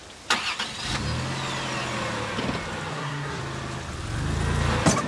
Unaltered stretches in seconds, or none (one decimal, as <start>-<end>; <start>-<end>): 0.0-2.9; 3.4-5.1